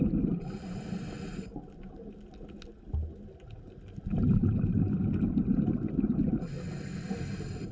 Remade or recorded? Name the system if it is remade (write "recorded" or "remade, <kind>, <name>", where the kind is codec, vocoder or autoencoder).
recorded